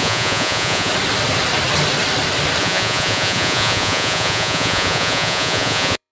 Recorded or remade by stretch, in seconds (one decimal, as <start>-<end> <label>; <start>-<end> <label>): 0.0-0.9 remade; 0.9-2.6 recorded; 2.6-6.1 remade